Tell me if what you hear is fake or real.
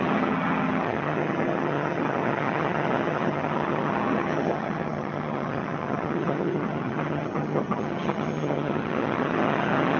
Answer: fake